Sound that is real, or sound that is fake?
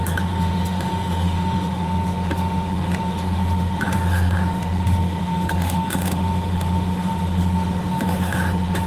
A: fake